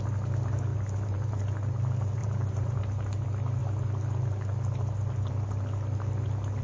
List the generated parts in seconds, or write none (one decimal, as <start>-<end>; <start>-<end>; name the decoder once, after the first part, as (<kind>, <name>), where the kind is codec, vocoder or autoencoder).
0.7-1.4 (vocoder, BigVGAN v2); 2.2-2.8